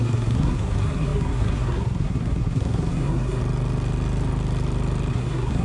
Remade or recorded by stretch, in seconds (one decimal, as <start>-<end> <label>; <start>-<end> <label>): 0.0-3.4 remade; 3.4-5.1 recorded; 5.1-5.6 remade